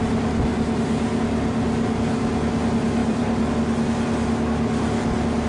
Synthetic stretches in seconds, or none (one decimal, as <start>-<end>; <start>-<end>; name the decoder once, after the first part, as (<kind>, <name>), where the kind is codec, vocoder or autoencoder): 3.0-3.5 (vocoder, BigVGAN v2)